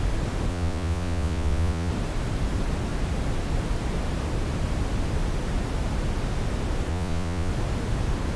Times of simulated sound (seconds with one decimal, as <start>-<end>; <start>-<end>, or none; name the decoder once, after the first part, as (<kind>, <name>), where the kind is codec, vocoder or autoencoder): 0.5-1.9 (vocoder, Vocos); 6.9-7.5